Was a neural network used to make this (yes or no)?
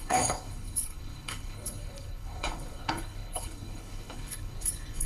yes